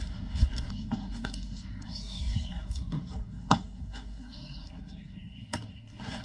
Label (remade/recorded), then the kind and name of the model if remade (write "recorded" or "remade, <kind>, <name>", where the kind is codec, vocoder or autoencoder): remade, codec, SNAC